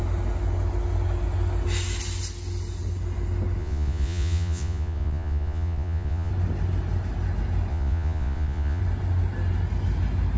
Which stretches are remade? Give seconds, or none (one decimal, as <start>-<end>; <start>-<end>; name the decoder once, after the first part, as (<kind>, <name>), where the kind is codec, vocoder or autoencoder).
3.6-6.3 (vocoder, Vocos); 7.7-8.8

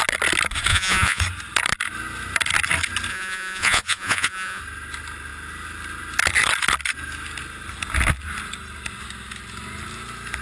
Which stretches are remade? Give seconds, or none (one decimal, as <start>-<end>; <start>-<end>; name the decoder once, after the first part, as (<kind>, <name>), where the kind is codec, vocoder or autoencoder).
0.7-1.2 (vocoder, Vocos); 3.1-4.6